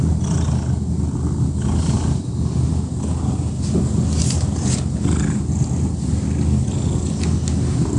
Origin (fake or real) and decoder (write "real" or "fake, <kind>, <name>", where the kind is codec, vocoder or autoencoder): real